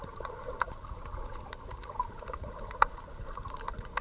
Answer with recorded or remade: remade